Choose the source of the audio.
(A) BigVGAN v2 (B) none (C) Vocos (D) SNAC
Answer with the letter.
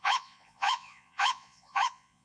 C